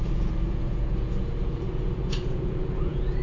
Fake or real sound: fake